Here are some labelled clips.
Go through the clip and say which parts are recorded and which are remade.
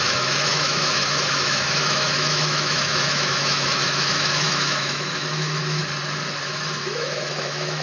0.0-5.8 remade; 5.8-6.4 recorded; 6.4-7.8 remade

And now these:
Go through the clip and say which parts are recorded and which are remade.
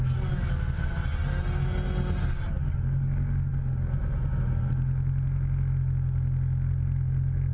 0.0-7.5 recorded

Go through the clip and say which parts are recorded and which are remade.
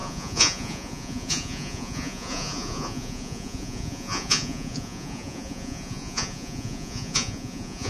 0.0-7.9 remade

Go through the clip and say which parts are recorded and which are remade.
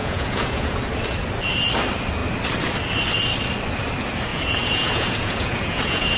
0.0-0.8 remade; 0.8-4.3 recorded; 4.3-6.2 remade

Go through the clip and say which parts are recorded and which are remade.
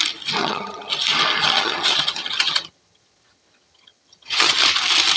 0.0-0.4 recorded; 0.4-0.9 remade; 0.9-1.4 recorded; 1.4-4.5 remade; 4.5-5.2 recorded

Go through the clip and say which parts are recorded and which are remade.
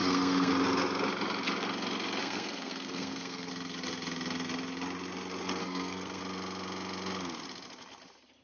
0.0-0.5 remade; 0.5-2.2 recorded; 2.2-3.5 remade; 3.5-5.6 recorded; 5.6-6.2 remade; 6.2-8.4 recorded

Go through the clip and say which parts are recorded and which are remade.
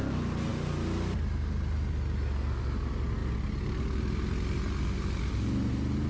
0.0-6.1 recorded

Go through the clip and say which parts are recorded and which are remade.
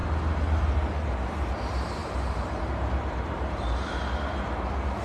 0.0-2.0 recorded; 2.0-3.9 remade; 3.9-5.0 recorded